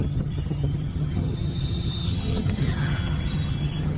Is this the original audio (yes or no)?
no